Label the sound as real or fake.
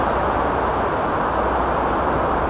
real